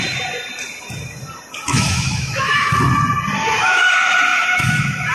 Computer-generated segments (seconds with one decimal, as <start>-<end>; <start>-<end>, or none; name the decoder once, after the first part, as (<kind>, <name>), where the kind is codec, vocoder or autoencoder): 1.7-2.7 (autoencoder, DAC-VAE); 3.4-3.9; 4.3-5.1